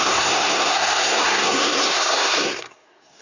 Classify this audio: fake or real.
fake